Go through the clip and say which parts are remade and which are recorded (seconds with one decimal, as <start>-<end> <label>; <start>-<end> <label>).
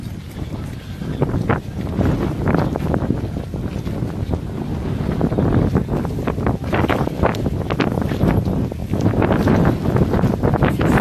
0.0-1.5 recorded; 1.5-3.3 remade; 3.3-8.8 recorded; 8.8-9.5 remade; 9.5-11.0 recorded